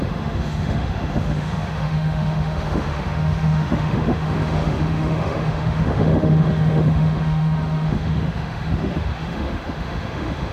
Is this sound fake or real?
fake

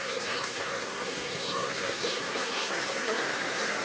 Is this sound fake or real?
fake